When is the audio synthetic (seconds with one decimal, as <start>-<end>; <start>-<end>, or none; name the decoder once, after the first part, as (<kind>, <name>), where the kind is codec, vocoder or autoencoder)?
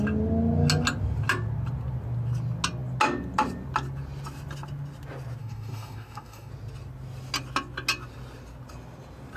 5.4-6.5 (codec, DAC)